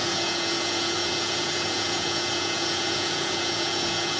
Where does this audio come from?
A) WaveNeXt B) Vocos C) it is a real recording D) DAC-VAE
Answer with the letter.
B